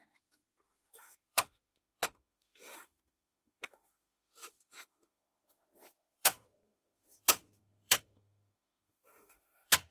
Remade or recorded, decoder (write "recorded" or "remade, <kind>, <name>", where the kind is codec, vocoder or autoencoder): remade, autoencoder, DAC-VAE